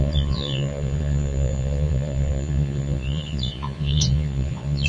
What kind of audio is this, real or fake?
fake